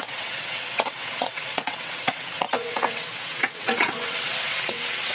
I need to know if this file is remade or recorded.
remade